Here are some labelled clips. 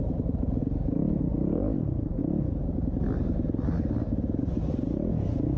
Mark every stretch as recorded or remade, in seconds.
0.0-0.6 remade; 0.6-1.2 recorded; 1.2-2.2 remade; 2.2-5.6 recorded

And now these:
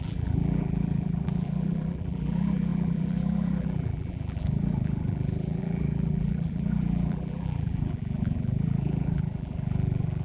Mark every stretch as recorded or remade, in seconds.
0.0-10.2 remade